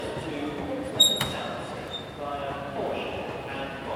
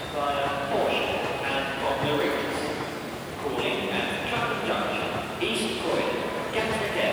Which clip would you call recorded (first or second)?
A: second